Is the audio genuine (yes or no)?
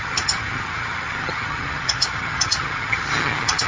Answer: no